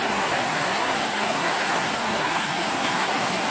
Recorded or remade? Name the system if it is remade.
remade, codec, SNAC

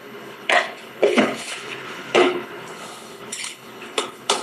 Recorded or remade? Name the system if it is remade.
remade, codec, HILCodec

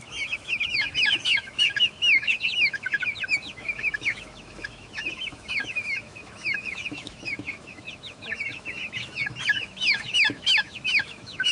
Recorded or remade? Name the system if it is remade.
remade, autoencoder, DAC-VAE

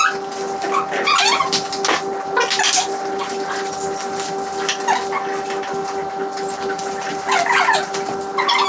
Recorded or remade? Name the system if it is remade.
recorded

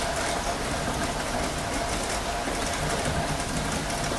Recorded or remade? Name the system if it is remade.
recorded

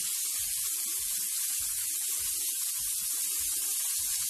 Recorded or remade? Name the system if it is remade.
recorded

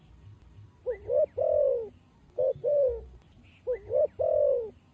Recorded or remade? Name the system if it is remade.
recorded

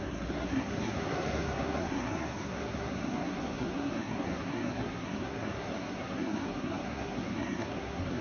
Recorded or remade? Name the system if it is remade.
remade, codec, SNAC